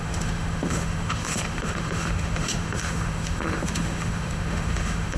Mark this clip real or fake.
fake